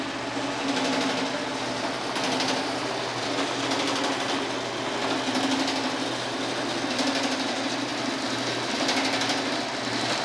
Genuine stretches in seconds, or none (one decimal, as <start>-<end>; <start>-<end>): 0.0-10.2